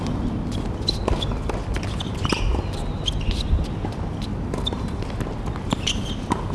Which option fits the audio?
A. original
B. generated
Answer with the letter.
A